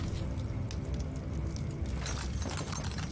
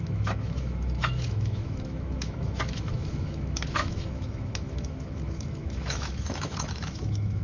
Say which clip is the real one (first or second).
first